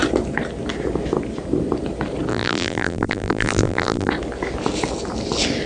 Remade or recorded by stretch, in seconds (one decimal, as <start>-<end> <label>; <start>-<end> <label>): 0.0-2.3 recorded; 2.3-4.1 remade; 4.1-5.7 recorded